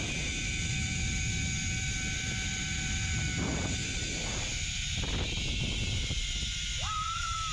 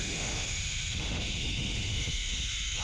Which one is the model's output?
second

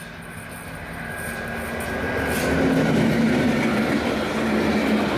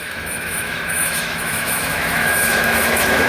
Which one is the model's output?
second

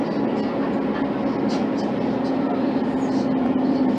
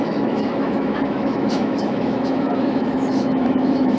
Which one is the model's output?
second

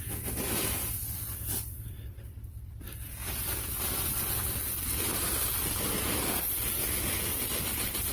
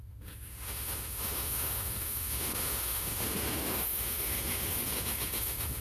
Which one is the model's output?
second